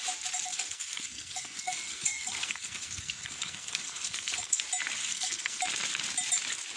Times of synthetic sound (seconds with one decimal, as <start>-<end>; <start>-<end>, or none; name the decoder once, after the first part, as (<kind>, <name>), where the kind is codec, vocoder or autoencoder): 0.5-4.6 (codec, SNAC); 5.0-5.6